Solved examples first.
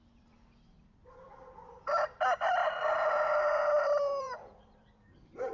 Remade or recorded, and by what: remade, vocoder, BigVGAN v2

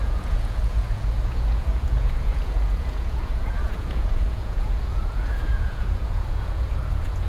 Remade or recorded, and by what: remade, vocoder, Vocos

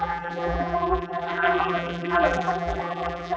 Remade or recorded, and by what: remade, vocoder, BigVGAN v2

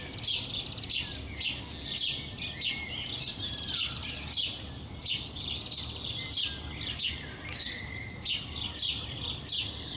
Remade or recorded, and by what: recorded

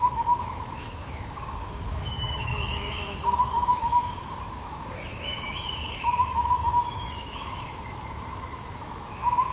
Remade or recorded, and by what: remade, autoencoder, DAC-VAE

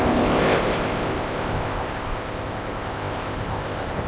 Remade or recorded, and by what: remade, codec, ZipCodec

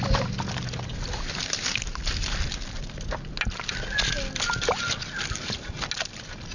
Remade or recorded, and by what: recorded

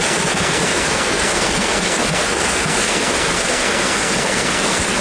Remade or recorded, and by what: remade, codec, SNAC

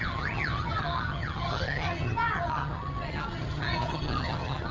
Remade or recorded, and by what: remade, vocoder, HiFi-GAN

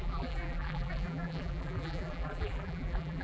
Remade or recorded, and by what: remade, vocoder, BigVGAN v2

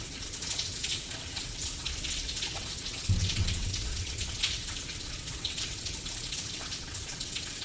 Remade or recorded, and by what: remade, vocoder, WaveNeXt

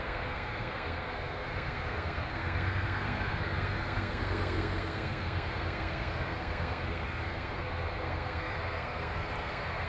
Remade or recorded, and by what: remade, codec, SNAC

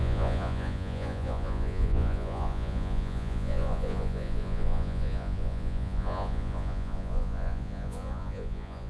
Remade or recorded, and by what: remade, vocoder, Vocos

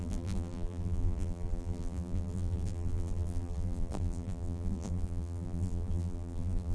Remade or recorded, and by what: remade, vocoder, BigVGAN v2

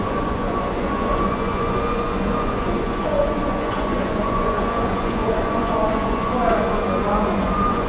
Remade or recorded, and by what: remade, vocoder, Vocos